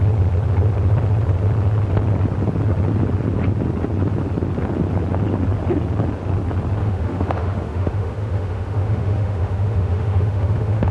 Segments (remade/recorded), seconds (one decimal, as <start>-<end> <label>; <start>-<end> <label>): 0.0-6.8 recorded; 6.8-10.9 remade